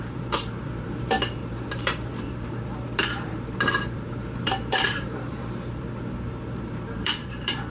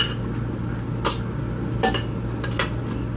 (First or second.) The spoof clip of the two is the first